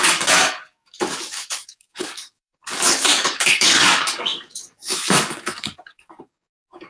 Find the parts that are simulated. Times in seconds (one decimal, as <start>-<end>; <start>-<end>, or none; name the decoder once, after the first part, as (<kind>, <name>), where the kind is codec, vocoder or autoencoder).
0.0-6.9 (codec, DAC)

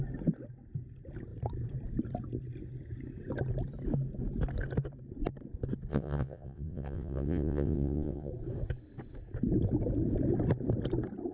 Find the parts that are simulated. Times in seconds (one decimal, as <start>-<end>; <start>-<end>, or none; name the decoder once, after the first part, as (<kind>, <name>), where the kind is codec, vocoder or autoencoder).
5.9-8.3 (vocoder, WaveNeXt)

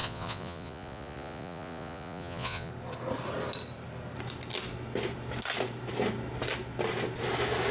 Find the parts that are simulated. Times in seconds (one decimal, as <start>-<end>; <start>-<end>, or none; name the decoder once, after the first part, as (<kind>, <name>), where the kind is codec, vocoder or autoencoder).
0.0-2.7 (vocoder, Vocos)

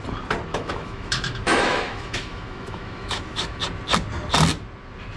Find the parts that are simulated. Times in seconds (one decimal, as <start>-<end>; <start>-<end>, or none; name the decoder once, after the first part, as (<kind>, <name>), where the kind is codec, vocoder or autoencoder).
0.5-3.6 (autoencoder, DAC-VAE)

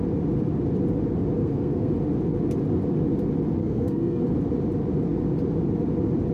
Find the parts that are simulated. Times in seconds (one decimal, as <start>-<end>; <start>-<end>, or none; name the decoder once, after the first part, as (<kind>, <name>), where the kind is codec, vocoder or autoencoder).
1.4-1.9 (codec, SNAC); 3.6-4.2